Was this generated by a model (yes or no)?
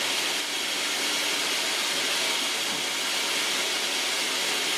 no